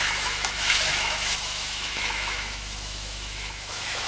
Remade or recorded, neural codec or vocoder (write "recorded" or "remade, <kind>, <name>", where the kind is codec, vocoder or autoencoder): remade, autoencoder, DAC-VAE